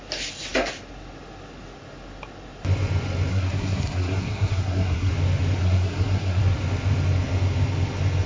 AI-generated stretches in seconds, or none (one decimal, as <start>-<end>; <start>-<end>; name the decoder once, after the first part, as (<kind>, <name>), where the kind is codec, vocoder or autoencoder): 3.3-5.1 (codec, SNAC); 5.6-6.4